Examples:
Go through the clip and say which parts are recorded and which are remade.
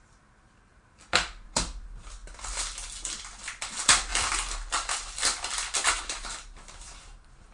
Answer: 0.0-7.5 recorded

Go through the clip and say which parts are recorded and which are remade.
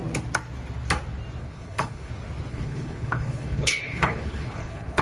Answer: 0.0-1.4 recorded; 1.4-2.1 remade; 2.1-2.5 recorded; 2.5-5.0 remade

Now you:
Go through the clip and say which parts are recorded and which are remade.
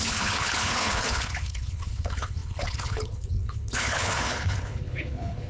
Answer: 0.0-5.5 remade